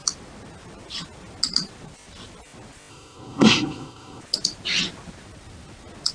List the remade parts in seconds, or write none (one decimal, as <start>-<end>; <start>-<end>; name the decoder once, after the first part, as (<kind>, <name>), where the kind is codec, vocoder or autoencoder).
2.9-4.2 (codec, SNAC)